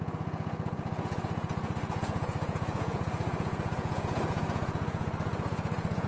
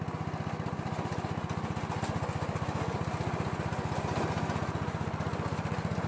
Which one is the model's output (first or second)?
first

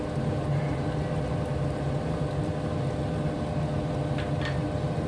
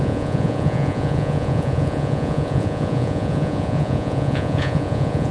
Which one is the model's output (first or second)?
second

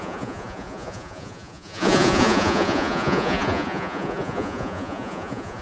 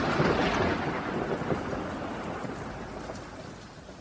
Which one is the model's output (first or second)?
first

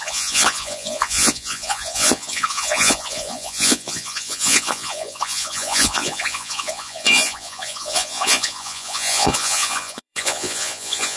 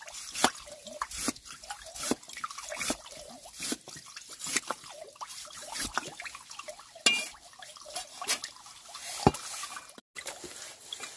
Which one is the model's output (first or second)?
first